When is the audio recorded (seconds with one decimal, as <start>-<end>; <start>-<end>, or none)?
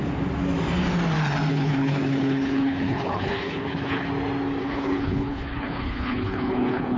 0.0-1.5; 4.1-4.6